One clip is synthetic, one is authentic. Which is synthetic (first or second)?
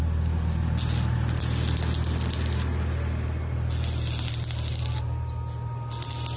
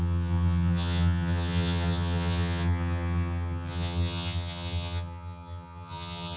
second